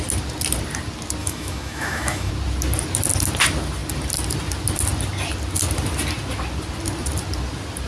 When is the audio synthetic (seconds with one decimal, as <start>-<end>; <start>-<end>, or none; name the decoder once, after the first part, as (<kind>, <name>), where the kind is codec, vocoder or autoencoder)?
1.2-2.3 (autoencoder, DAC-VAE)